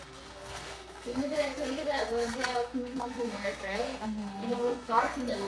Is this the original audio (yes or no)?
no